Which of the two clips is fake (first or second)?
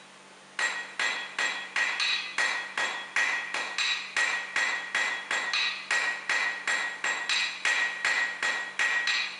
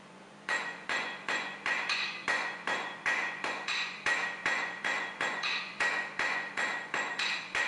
second